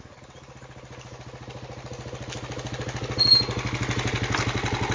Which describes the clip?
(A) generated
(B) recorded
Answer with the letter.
B